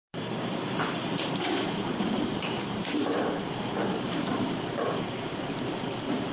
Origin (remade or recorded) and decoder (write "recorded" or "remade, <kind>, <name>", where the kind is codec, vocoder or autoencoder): remade, vocoder, BigVGAN v2